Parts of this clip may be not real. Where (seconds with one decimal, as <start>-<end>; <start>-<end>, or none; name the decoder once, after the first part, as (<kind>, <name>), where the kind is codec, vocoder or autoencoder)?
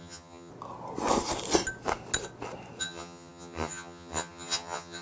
0.0-0.5 (vocoder, HiFi-GAN); 2.8-5.0